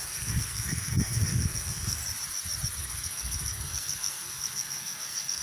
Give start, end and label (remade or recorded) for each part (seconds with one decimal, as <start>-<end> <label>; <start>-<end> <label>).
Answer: 0.0-2.0 remade; 2.0-2.8 recorded; 2.8-5.4 remade